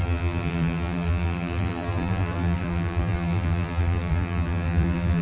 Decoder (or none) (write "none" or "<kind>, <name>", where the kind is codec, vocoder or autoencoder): vocoder, BigVGAN v2